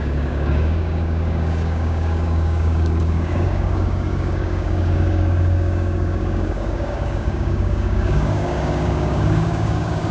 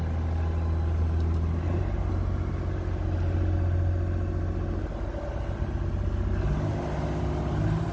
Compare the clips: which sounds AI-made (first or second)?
first